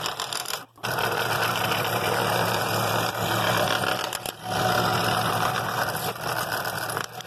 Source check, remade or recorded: recorded